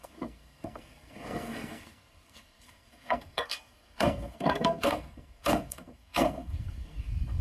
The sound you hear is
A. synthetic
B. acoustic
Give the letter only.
A